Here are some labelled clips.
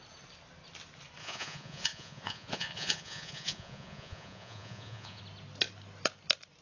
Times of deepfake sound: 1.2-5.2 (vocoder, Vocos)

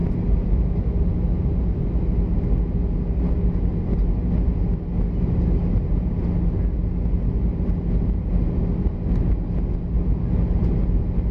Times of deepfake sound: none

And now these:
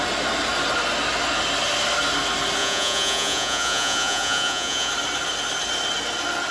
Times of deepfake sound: 2.6-4.9 (vocoder, Vocos)